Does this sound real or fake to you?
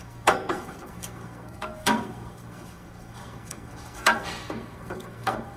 fake